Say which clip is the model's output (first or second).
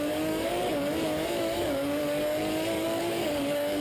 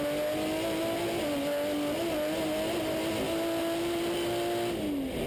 first